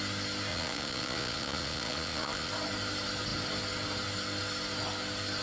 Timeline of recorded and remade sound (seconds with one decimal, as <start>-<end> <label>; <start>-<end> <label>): 0.0-0.5 recorded; 0.5-2.5 remade; 2.5-5.4 recorded